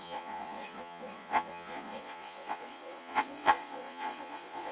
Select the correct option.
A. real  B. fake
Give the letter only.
B